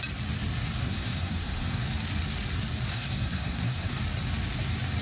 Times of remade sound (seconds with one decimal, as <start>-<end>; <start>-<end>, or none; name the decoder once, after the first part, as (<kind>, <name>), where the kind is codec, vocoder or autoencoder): 0.8-1.8 (codec, SNAC); 2.9-4.0